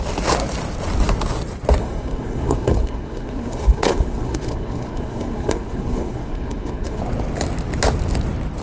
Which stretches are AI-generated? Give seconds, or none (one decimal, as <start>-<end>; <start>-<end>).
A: 1.8-7.0